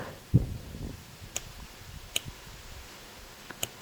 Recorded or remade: recorded